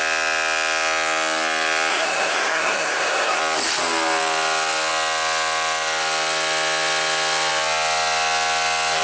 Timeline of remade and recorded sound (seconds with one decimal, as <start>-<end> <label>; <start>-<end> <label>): 0.0-1.9 recorded; 1.9-3.4 remade; 3.4-9.0 recorded